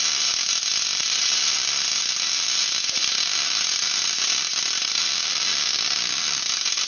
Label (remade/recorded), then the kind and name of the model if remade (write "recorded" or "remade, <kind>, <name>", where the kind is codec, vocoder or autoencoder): recorded